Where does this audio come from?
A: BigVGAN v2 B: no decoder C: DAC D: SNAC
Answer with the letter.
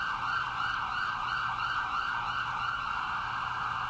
B